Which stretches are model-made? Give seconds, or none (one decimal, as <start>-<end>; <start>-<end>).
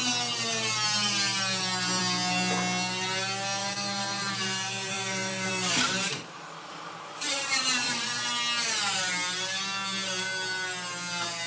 3.6-8.3